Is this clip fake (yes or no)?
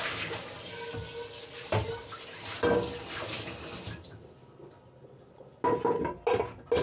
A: no